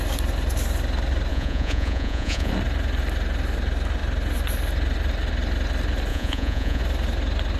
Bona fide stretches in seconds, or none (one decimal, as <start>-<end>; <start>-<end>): 0.0-1.3; 2.5-6.1; 6.8-7.6